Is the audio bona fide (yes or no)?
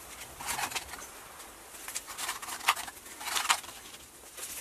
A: yes